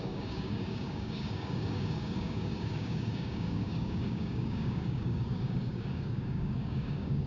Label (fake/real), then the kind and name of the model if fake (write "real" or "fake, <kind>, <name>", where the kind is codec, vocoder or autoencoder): fake, codec, DAC